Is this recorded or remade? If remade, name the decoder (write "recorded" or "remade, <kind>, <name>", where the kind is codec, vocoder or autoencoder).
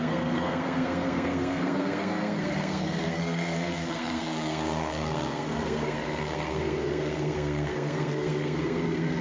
remade, codec, SNAC